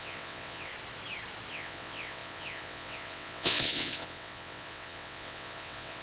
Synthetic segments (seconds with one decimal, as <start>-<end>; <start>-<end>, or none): 0.0-0.7; 1.5-6.0